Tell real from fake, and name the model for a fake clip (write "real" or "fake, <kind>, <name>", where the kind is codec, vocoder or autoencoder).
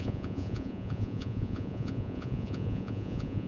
fake, vocoder, Vocos